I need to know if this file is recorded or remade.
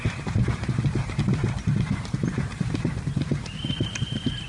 remade